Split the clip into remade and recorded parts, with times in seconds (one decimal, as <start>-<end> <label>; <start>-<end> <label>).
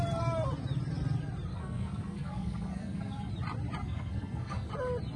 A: 0.0-1.5 recorded; 1.5-3.3 remade; 3.3-3.8 recorded; 3.8-4.7 remade; 4.7-5.2 recorded